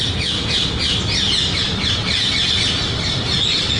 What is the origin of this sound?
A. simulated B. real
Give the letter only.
B